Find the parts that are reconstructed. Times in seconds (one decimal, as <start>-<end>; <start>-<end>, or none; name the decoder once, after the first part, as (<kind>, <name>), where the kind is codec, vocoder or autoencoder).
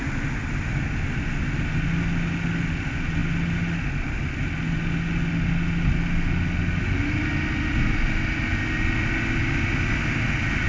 none